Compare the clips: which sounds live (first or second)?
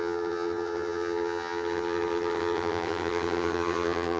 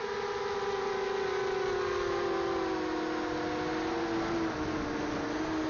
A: second